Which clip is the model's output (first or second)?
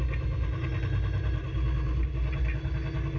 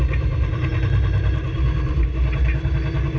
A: second